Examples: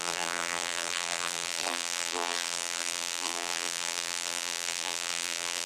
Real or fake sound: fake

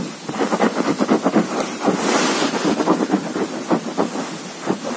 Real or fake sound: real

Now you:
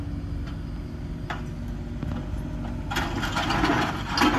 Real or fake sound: real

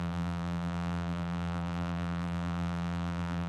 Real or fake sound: fake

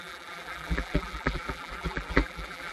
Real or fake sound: fake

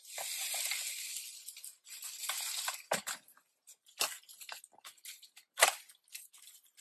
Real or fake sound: real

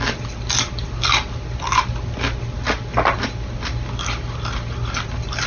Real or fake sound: real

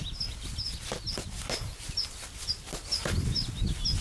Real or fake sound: real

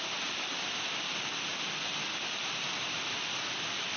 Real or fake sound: real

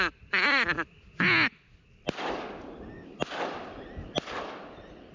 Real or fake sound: real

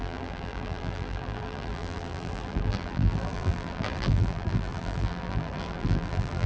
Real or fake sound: fake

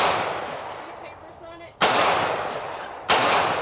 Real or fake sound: fake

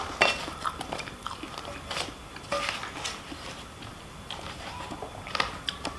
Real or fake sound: real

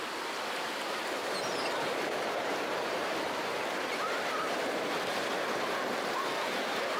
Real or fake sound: real